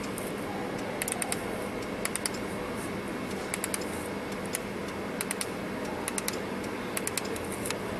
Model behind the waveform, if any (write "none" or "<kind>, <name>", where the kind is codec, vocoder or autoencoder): none